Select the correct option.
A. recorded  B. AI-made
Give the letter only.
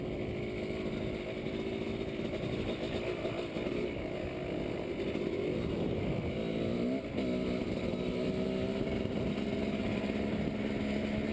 A